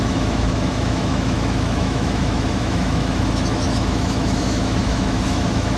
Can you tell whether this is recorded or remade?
remade